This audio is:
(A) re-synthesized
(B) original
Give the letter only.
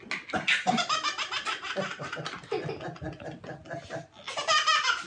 B